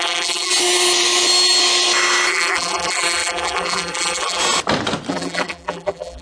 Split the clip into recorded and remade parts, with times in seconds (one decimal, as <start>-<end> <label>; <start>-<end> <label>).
0.0-0.5 remade; 0.5-2.3 recorded; 2.3-4.4 remade; 4.4-5.1 recorded; 5.1-6.2 remade